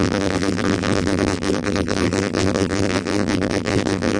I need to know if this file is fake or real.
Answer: fake